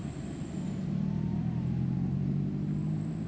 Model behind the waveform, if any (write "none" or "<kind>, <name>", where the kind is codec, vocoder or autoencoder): none